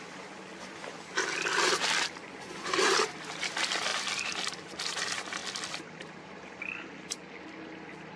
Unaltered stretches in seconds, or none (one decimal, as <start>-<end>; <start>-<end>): 0.0-2.2; 2.8-8.2